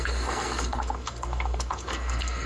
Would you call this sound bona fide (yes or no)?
no